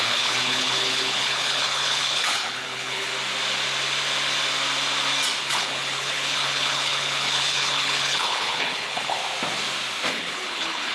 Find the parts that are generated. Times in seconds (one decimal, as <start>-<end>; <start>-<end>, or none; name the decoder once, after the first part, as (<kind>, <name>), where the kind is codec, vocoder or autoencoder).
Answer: 0.0-3.1 (codec, HILCodec); 5.4-9.2; 10.1-10.9